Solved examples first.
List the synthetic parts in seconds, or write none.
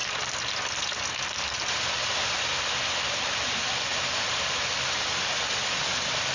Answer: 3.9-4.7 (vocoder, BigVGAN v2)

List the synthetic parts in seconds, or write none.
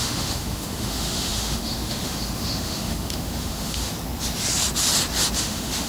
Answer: 0.0-3.9 (autoencoder, DAC-VAE); 5.4-5.9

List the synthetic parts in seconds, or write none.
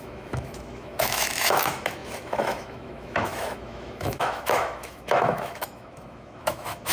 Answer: 0.0-6.9 (autoencoder, DAC-VAE)